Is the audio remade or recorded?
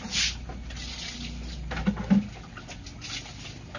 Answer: recorded